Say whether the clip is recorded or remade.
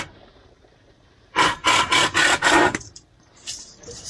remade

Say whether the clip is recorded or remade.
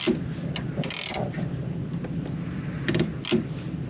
recorded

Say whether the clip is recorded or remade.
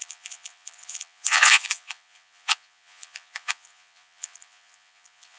remade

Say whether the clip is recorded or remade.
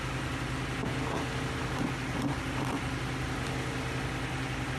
recorded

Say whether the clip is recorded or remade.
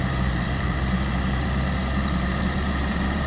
remade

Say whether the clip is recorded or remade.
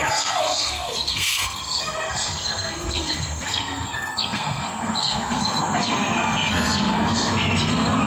remade